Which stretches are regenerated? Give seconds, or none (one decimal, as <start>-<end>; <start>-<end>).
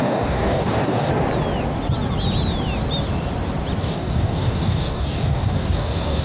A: 0.0-1.1; 3.8-6.2